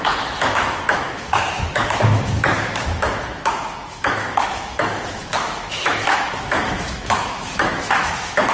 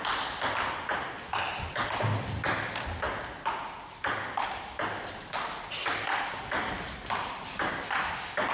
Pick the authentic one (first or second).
second